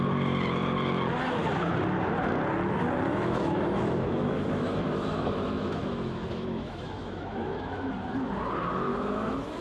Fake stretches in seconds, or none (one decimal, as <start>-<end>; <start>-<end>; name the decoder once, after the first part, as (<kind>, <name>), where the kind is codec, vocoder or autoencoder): 3.1-7.9 (autoencoder, DAC-VAE); 8.9-9.6